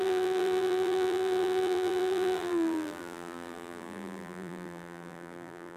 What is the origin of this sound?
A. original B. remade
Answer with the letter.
B